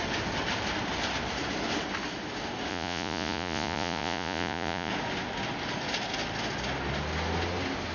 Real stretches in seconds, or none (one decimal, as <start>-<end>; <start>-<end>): 0.0-2.7; 4.9-7.9